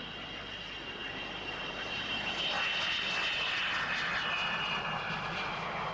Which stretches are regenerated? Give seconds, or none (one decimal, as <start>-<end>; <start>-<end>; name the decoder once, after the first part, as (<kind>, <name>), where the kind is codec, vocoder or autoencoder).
none